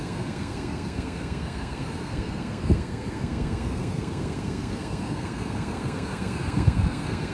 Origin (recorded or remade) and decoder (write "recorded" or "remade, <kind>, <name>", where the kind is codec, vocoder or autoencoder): remade, codec, SNAC